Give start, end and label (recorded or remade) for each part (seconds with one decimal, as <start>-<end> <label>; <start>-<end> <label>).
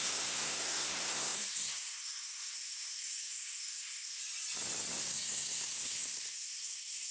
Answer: 0.0-4.2 remade; 4.2-5.0 recorded; 5.0-7.1 remade